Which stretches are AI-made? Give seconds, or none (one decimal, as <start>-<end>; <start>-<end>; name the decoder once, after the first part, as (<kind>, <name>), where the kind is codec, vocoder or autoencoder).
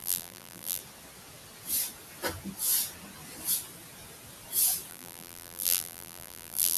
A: 0.0-0.8 (vocoder, BigVGAN v2); 4.9-6.8